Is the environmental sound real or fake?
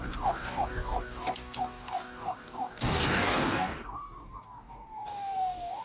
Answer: fake